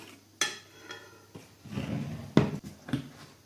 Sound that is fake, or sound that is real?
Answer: real